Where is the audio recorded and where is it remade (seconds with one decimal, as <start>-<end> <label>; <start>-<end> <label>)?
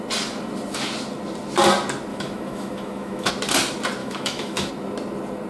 0.0-2.1 recorded; 2.1-3.3 remade; 3.3-4.0 recorded; 4.0-4.7 remade; 4.7-5.5 recorded